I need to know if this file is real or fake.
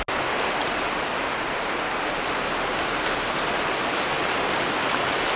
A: real